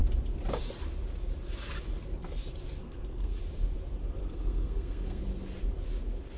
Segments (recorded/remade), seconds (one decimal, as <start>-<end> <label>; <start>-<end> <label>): 0.0-2.8 recorded; 2.8-3.4 remade; 3.4-4.2 recorded; 4.2-5.2 remade; 5.2-6.4 recorded